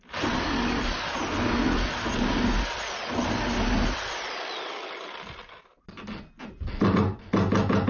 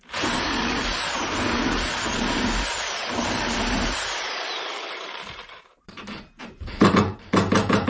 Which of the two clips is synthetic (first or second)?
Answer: second